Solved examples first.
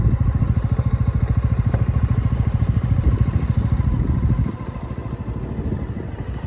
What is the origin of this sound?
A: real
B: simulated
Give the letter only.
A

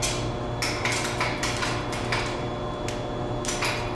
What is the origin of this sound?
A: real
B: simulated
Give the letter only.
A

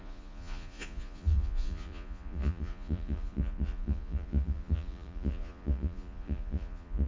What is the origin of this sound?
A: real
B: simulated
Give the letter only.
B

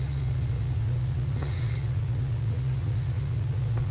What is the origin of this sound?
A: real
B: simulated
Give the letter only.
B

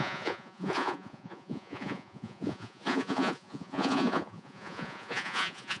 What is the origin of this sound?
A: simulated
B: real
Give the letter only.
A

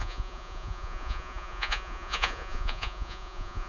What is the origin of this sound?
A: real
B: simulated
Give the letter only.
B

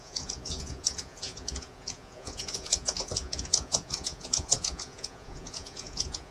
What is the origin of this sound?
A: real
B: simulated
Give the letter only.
B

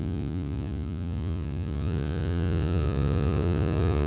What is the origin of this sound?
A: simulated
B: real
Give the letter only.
A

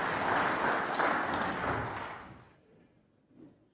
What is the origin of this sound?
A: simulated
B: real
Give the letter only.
B